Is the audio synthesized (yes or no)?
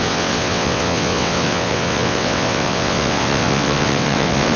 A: yes